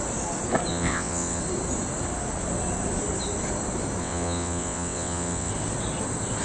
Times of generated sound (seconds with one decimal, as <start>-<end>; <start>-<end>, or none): 0.7-1.4; 4.0-5.5